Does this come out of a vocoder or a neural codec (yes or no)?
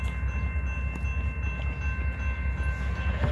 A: no